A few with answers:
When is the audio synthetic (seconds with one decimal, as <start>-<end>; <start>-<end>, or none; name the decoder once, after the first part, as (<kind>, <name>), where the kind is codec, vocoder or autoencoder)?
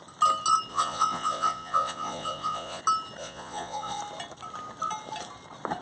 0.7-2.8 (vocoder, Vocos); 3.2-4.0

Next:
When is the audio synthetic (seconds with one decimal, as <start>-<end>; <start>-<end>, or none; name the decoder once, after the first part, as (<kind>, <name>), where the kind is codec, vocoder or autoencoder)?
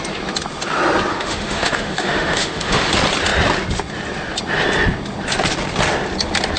1.1-2.9 (autoencoder, DAC-VAE)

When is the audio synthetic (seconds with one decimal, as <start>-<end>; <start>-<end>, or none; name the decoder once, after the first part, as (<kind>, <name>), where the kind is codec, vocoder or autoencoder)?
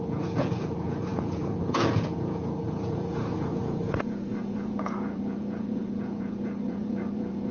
0.0-7.5 (vocoder, Vocos)